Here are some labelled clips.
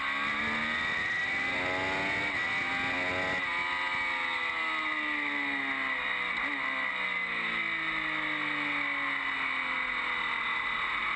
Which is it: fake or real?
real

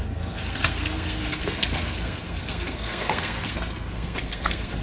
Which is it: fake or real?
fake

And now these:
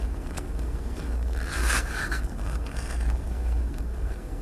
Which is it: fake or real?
fake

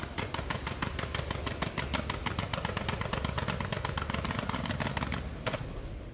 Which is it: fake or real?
real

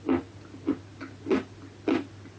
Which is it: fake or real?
real